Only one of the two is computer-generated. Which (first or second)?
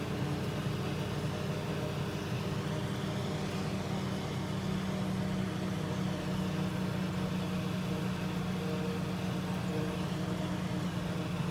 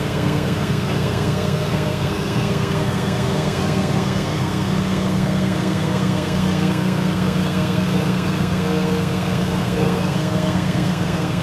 second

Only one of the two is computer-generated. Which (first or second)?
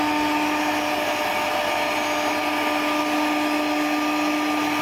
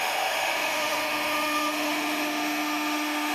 second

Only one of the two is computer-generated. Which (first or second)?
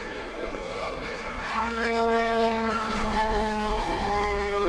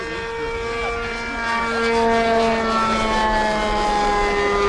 first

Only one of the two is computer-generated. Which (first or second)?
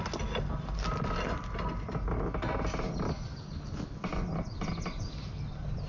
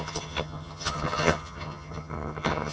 second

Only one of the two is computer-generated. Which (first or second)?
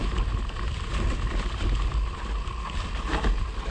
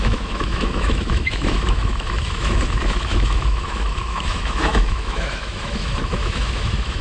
second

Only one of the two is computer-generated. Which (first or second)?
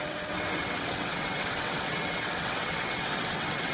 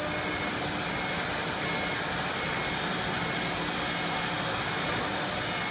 first